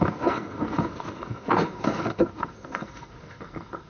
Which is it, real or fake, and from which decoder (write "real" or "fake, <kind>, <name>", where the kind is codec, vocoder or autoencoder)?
fake, codec, SNAC